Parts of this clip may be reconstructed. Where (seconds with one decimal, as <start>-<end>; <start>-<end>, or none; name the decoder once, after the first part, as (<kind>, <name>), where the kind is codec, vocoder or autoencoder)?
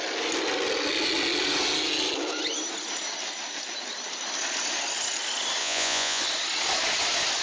5.6-6.2 (vocoder, Vocos)